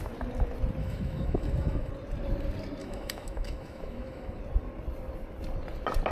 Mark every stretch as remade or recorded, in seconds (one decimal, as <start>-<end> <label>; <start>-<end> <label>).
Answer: 0.0-0.8 recorded; 0.8-1.9 remade; 1.9-2.8 recorded; 2.8-4.4 remade; 4.4-6.1 recorded